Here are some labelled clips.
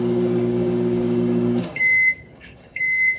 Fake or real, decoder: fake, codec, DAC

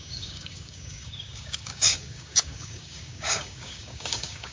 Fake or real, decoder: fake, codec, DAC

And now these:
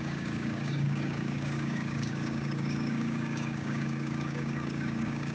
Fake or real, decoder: fake, codec, DAC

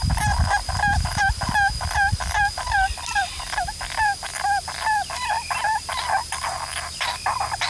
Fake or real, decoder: real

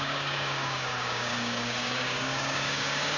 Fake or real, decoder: fake, codec, DAC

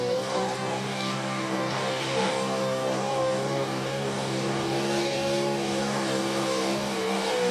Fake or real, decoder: fake, codec, DAC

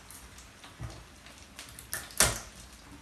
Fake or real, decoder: real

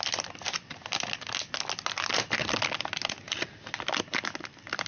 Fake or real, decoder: real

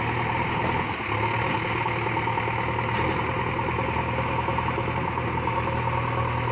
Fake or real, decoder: real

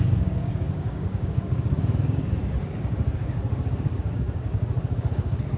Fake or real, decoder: fake, codec, DAC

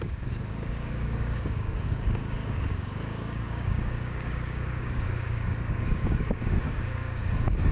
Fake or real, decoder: fake, codec, DAC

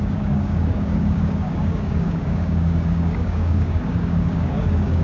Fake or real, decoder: fake, codec, DAC